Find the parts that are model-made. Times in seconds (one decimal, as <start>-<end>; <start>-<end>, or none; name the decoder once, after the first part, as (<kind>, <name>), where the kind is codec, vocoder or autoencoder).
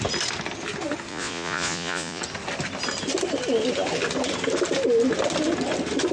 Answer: 1.1-2.2 (vocoder, Vocos)